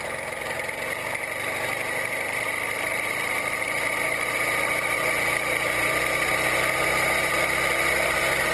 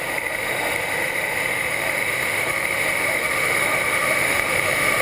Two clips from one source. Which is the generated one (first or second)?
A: second